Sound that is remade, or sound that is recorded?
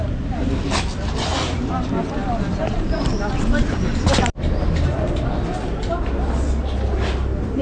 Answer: recorded